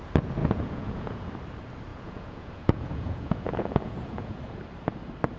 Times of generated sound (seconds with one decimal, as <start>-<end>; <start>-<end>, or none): 0.4-1.3; 1.9-4.4